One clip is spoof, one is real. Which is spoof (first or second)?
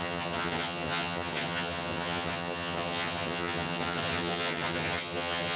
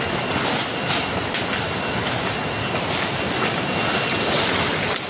first